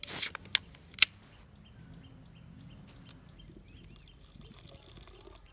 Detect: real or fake real